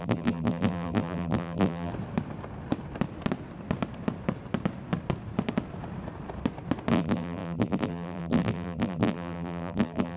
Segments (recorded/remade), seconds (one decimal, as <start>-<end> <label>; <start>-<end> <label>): 0.0-1.9 remade; 1.9-6.9 recorded; 6.9-10.2 remade